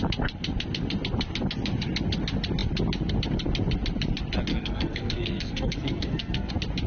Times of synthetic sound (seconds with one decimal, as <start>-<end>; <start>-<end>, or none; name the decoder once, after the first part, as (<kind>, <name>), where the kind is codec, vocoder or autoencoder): 4.5-6.5 (codec, SNAC)